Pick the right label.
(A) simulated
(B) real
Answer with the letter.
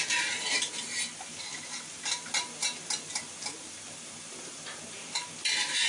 B